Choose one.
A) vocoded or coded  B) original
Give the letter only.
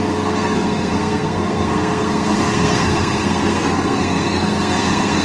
A